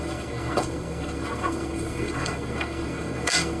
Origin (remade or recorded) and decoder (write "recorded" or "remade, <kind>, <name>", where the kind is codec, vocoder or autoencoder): remade, codec, SNAC